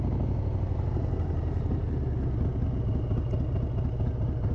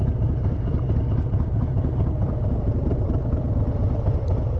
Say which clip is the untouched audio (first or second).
first